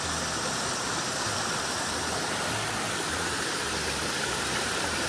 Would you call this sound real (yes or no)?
no